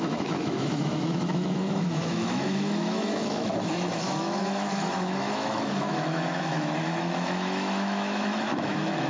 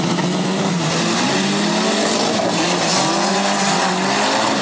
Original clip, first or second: second